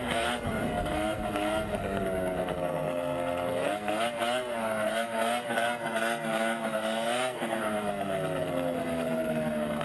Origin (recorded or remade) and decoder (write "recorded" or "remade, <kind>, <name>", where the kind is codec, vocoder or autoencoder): remade, codec, SNAC